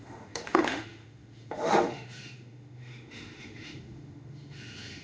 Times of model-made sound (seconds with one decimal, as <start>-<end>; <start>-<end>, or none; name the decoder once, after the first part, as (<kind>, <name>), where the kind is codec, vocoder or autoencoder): 0.0-5.0 (autoencoder, DAC-VAE)